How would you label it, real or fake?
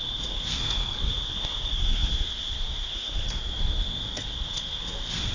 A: fake